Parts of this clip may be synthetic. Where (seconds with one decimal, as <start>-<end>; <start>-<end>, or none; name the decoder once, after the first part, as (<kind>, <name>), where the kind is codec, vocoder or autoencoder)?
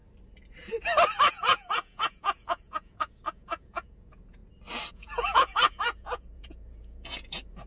1.3-4.4 (vocoder, Vocos); 4.9-7.7